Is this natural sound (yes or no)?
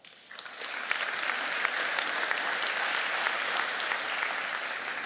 yes